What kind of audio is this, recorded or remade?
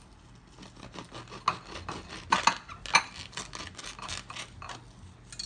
recorded